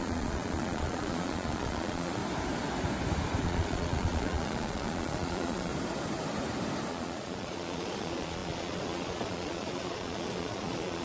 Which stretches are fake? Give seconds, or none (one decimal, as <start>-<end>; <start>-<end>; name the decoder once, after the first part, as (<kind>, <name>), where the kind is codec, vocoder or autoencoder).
0.0-2.2 (vocoder, Vocos); 3.4-5.7; 6.9-11.0